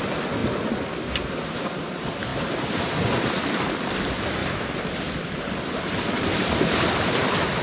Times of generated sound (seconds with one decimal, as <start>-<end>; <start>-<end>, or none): 2.3-3.3; 4.4-7.1